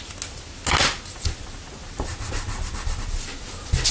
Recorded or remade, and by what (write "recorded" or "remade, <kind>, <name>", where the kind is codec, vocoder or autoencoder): recorded